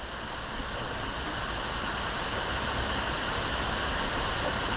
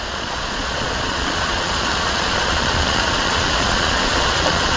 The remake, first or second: second